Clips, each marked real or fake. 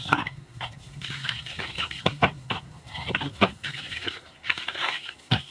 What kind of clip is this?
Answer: fake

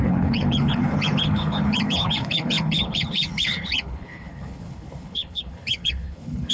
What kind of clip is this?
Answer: fake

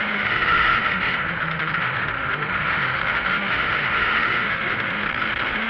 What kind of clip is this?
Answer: fake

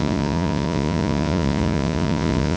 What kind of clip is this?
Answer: fake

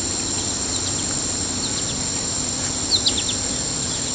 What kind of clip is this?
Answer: real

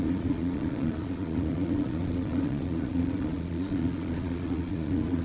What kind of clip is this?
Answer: fake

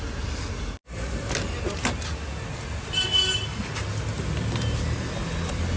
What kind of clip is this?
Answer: real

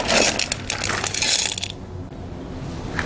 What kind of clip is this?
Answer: real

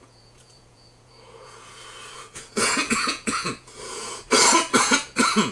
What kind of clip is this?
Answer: fake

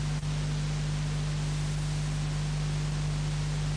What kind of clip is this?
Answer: real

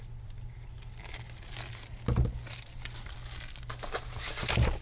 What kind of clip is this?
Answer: real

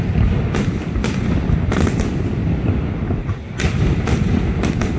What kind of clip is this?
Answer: real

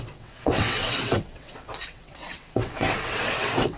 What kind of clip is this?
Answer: fake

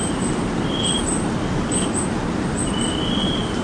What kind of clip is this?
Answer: fake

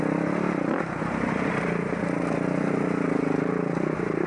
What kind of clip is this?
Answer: real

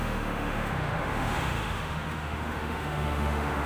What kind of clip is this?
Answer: fake